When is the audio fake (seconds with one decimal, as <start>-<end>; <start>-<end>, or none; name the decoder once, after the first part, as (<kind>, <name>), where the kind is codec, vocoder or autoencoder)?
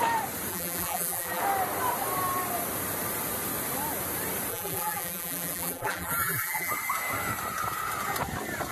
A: 0.5-1.4 (vocoder, BigVGAN v2); 4.5-6.7